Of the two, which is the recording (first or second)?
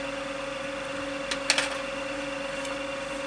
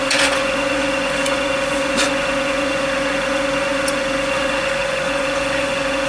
first